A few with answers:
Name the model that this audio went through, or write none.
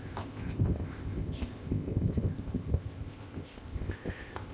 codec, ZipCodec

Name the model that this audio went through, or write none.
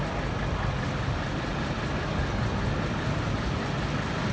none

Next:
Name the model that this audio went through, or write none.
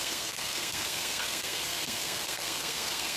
codec, SNAC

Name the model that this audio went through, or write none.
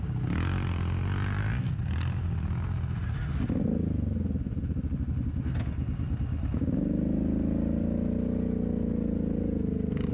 none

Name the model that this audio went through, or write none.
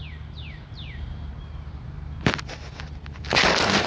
none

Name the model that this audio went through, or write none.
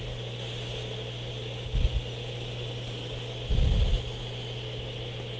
none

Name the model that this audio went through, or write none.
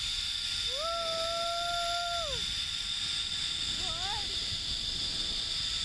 none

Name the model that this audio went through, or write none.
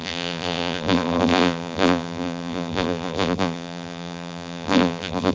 vocoder, BigVGAN v2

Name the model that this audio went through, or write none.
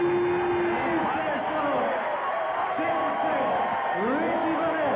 none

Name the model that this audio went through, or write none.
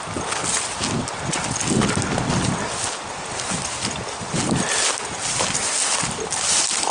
none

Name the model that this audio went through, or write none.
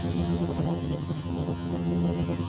vocoder, HiFi-GAN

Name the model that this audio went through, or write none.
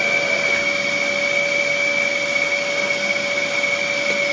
none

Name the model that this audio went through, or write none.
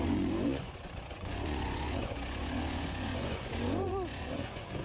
vocoder, Vocos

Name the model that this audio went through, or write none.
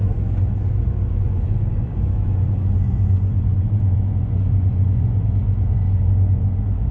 vocoder, Vocos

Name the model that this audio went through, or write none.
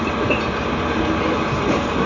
none